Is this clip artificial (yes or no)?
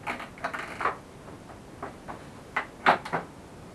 no